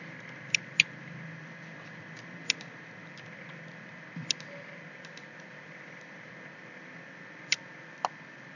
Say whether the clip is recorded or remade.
remade